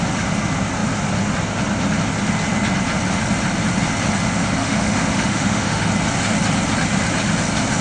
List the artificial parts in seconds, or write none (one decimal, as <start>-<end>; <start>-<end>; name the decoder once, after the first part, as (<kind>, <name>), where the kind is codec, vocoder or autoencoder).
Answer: 4.6-5.9 (autoencoder, DAC-VAE)